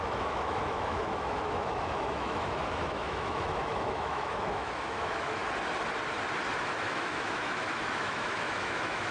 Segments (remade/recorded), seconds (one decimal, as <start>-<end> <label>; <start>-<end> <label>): 0.0-5.4 remade; 5.4-6.6 recorded; 6.6-9.1 remade